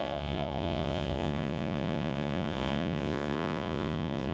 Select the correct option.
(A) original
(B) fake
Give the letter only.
B